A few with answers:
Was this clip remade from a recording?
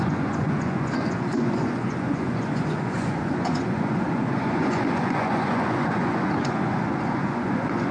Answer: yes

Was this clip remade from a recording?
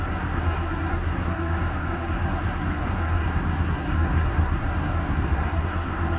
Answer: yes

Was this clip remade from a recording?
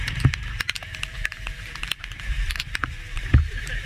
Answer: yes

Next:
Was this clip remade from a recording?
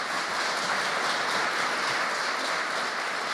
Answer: no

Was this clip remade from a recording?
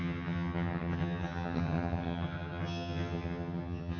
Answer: yes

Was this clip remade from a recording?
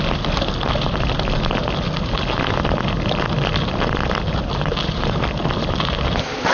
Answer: no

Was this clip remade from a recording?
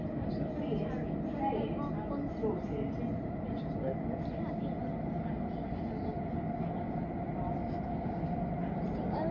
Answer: no